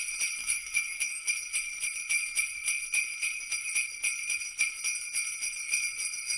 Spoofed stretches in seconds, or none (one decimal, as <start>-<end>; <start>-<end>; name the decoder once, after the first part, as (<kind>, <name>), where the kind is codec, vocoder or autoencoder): 0.4-1.3 (autoencoder, DAC-VAE)